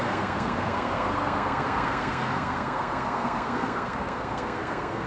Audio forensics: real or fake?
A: fake